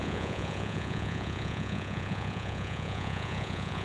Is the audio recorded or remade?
remade